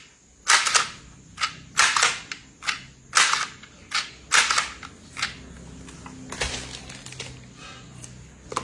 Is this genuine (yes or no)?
yes